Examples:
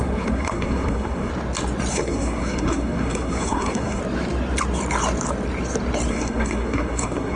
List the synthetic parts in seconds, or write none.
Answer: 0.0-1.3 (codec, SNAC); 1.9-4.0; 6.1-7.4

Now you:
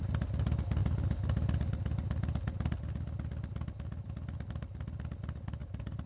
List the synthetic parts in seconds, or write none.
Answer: 5.6-6.1 (vocoder, BigVGAN v2)

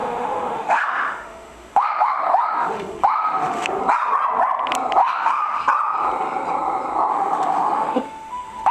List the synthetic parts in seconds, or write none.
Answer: 0.0-3.8 (autoencoder, DAC-VAE); 5.0-5.6; 7.1-8.7

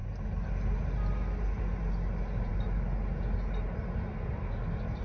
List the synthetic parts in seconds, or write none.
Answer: none

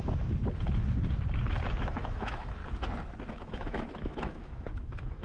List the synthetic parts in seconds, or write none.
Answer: 0.0-0.4 (autoencoder, DAC-VAE); 1.8-2.6; 3.3-5.2

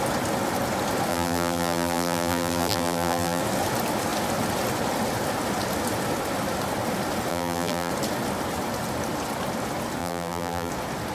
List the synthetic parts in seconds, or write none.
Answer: 1.1-3.4 (vocoder, BigVGAN v2); 7.3-7.9; 10.0-10.7

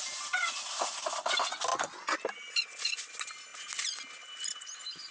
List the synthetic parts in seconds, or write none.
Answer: none

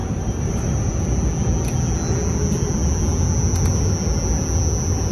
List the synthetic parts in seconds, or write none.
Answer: 0.0-0.9 (vocoder, BigVGAN v2)